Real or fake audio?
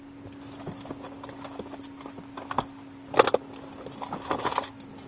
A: real